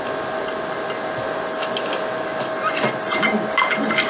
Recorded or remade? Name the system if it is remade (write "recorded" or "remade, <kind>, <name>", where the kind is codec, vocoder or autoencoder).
recorded